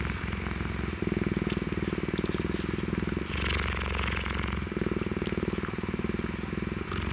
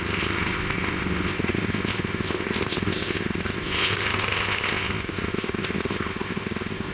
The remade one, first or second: second